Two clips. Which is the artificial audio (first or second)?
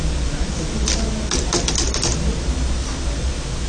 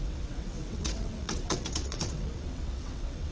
second